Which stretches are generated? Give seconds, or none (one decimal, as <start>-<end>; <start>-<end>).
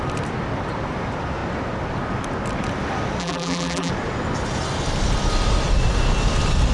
3.2-3.9